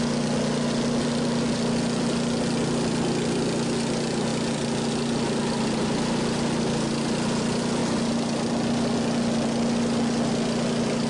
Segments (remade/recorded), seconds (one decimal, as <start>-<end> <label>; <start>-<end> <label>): 0.0-11.1 recorded